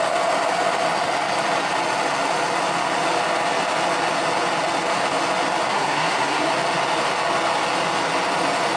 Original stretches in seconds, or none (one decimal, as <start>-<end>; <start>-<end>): 0.0-5.7; 6.5-8.8